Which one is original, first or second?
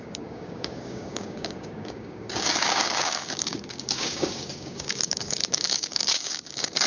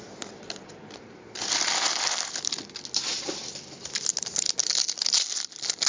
second